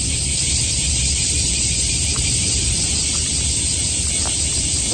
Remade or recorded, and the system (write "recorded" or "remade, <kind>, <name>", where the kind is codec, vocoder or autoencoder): remade, vocoder, BigVGAN v2